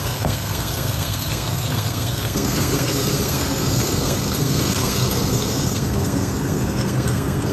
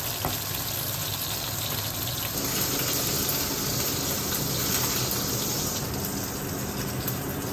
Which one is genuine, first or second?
second